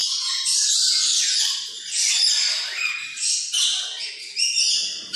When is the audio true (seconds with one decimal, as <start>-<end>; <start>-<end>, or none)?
0.0-5.2